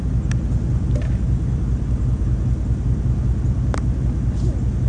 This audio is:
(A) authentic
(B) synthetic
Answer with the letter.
A